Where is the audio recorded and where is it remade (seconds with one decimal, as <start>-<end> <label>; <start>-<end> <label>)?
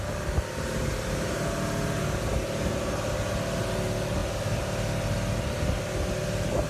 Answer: 0.0-6.7 recorded